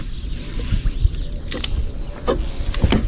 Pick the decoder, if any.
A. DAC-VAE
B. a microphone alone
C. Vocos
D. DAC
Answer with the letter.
B